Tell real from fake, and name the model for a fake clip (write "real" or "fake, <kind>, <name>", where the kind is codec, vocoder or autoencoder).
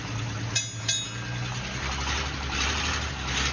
real